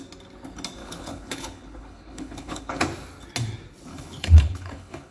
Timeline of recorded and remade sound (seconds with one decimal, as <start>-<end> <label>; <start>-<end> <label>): 0.0-0.8 recorded; 0.8-2.8 remade; 2.8-3.9 recorded; 3.9-5.1 remade